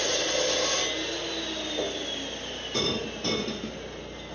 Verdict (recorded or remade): recorded